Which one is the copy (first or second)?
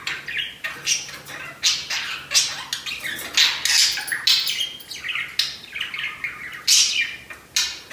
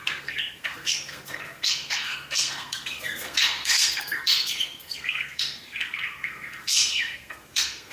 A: second